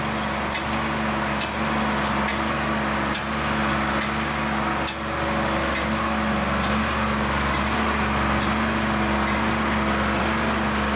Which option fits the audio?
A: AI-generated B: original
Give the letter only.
B